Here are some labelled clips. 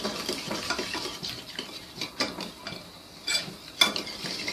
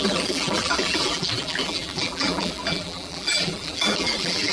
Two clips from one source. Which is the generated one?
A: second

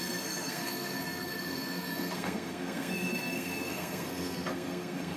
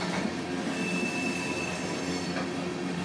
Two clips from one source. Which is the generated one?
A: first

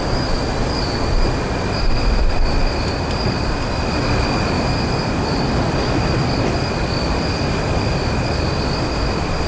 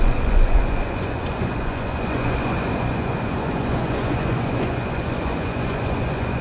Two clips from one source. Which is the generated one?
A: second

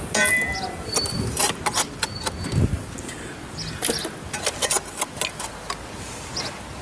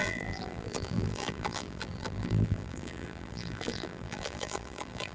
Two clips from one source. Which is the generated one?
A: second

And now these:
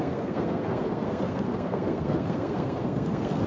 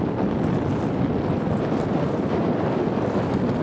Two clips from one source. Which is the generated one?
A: first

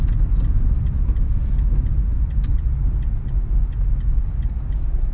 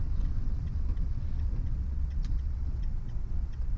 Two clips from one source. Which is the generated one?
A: second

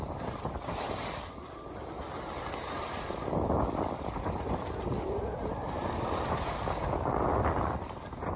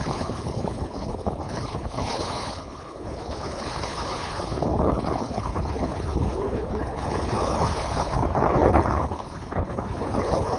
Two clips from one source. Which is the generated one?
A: second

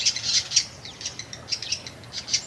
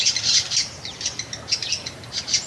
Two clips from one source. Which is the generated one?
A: second